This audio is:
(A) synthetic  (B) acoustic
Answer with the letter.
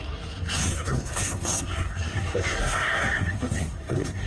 A